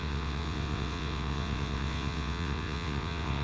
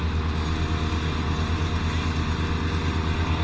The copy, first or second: first